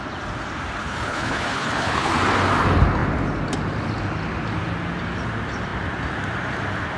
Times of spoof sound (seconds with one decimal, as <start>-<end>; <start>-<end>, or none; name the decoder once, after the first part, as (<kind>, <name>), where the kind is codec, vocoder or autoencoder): 0.8-2.1 (codec, HILCodec)